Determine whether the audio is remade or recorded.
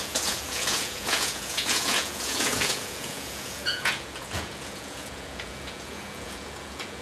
remade